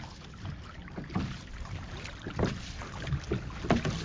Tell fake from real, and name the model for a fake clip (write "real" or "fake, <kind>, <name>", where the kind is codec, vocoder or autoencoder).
real